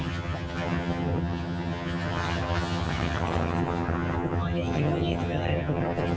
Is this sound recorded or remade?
remade